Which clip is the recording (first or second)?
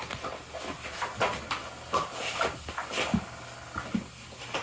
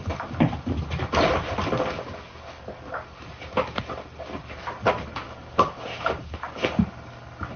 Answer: first